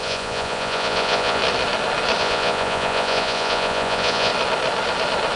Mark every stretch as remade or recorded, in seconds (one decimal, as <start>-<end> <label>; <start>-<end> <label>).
0.0-1.4 remade; 1.4-2.2 recorded; 2.2-4.3 remade; 4.3-5.4 recorded